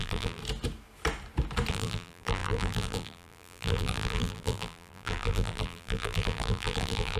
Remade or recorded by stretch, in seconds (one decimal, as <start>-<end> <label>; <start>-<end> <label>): 0.0-0.4 remade; 0.4-1.7 recorded; 1.7-7.2 remade